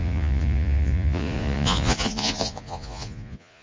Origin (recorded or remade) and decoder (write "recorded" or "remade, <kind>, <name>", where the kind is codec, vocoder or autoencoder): remade, vocoder, Vocos